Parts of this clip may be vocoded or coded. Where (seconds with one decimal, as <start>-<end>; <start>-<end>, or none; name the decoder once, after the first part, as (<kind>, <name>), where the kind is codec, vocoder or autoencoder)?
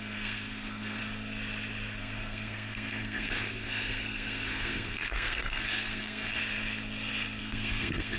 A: 0.0-1.0 (codec, SNAC); 2.0-6.4; 7.4-8.2